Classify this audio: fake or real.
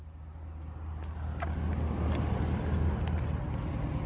real